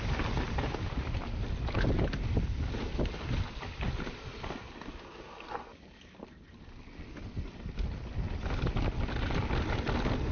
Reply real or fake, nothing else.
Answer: real